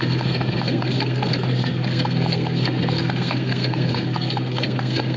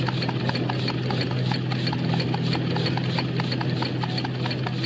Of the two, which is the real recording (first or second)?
second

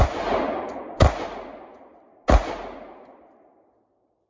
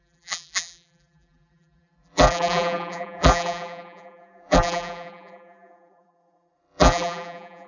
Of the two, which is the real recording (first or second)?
first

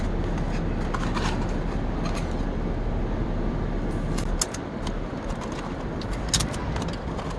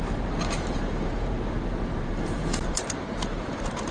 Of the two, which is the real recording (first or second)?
first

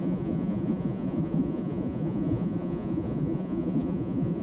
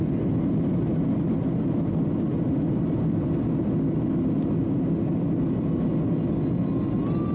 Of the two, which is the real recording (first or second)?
second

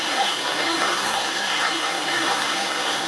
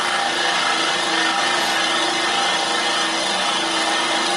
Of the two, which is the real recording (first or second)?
second